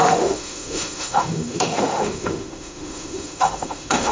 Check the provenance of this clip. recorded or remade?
remade